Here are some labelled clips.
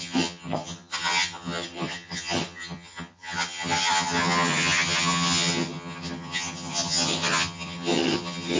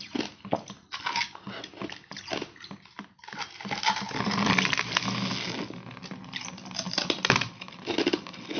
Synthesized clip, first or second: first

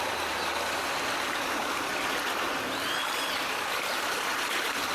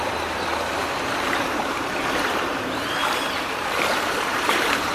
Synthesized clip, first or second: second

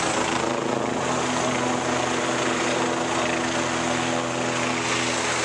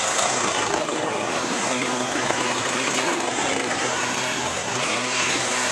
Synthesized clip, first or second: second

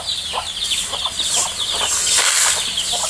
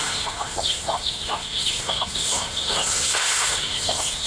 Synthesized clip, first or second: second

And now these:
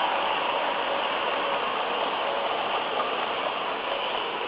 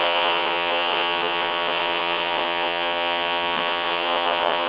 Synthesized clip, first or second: second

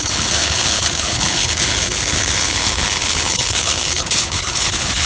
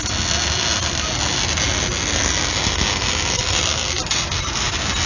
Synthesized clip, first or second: first